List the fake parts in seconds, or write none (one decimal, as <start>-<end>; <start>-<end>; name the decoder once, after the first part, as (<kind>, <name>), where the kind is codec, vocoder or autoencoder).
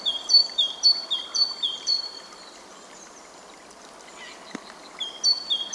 0.4-3.8 (vocoder, BigVGAN v2)